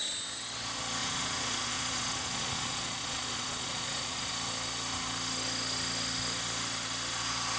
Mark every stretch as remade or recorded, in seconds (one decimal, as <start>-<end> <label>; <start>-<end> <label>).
0.0-1.0 recorded; 1.0-4.3 remade; 4.3-7.6 recorded